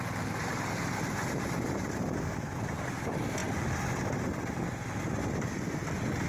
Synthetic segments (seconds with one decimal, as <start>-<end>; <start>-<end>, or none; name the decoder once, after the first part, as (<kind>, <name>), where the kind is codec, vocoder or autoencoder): none